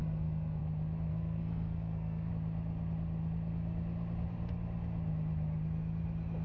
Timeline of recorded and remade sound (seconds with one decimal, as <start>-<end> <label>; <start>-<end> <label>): 0.0-0.6 remade; 0.6-1.1 recorded; 1.1-2.3 remade; 2.3-6.4 recorded